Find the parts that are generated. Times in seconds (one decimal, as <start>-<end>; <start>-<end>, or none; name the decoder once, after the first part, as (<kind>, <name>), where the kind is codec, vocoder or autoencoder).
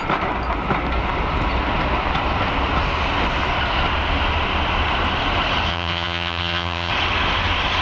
5.7-6.9 (vocoder, HiFi-GAN)